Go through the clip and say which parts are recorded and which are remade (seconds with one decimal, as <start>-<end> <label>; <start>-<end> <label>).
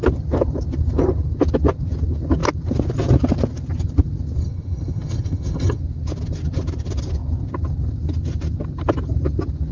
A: 0.0-4.4 recorded; 4.4-5.8 remade; 5.8-9.7 recorded